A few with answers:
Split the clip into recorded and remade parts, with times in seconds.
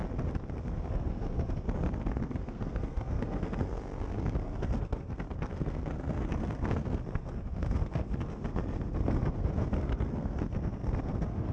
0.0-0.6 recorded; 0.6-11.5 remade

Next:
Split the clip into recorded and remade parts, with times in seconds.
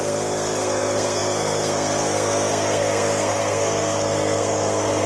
0.0-5.1 remade